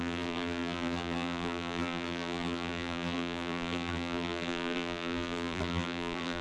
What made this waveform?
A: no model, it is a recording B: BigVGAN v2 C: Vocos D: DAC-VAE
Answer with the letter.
B